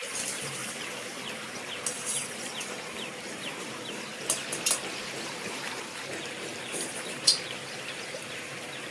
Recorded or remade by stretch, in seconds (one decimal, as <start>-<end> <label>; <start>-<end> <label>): 0.0-0.6 remade; 0.6-2.8 recorded; 2.8-4.1 remade; 4.1-4.9 recorded; 4.9-8.9 remade